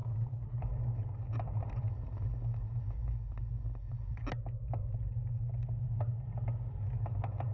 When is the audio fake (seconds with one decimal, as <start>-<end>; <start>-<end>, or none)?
0.0-0.6